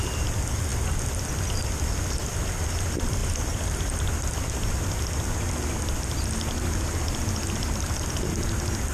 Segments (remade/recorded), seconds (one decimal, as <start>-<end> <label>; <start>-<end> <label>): 0.0-8.9 recorded